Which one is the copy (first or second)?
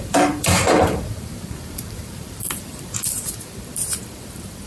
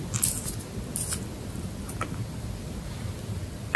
first